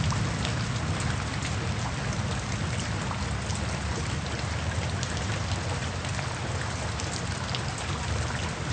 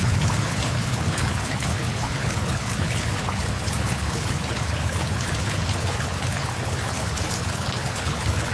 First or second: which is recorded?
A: first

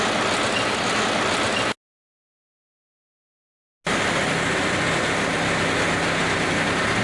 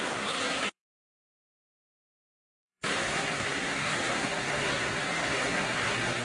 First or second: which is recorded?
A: first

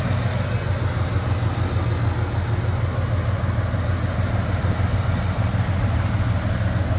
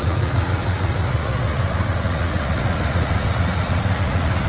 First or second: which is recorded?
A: first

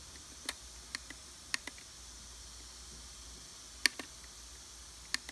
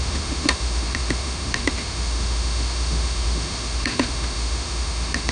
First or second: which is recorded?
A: first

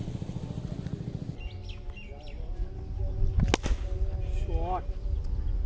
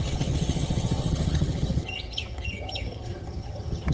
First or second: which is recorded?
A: first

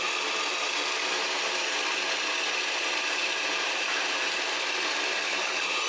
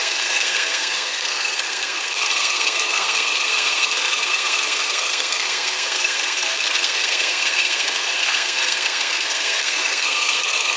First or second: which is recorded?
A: first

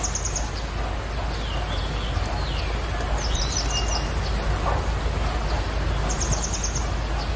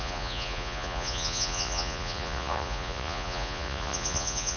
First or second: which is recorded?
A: first